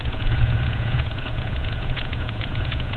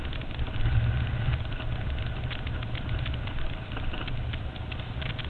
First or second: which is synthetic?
first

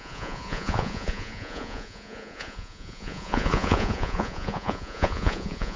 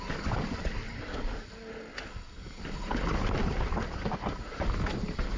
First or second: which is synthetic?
first